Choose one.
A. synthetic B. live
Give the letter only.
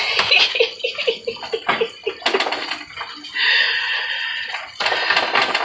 B